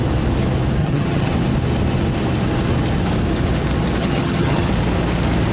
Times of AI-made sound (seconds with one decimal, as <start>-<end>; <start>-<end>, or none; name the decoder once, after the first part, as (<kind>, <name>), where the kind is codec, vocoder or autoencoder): 0.8-1.3 (vocoder, HiFi-GAN); 4.0-4.7